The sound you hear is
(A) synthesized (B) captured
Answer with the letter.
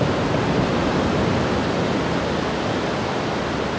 B